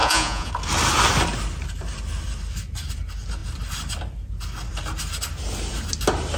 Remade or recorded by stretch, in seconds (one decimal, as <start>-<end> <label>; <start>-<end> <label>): 0.0-0.5 remade; 0.5-6.4 recorded